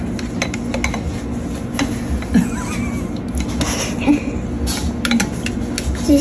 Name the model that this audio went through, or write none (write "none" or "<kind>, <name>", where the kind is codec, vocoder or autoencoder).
none